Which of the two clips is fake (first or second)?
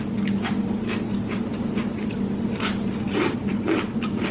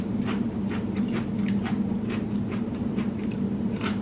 second